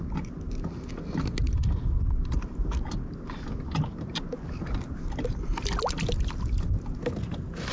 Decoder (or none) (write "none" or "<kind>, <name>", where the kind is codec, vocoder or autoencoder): none